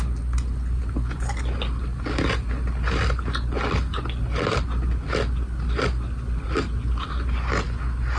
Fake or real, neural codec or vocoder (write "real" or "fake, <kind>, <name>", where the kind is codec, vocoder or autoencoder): real